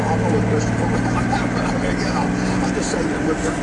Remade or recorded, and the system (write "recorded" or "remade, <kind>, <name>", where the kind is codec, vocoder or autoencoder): recorded